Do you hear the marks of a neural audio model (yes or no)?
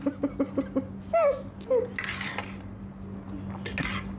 no